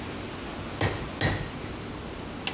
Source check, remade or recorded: recorded